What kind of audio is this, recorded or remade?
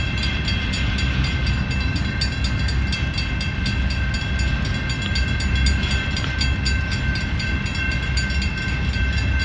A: recorded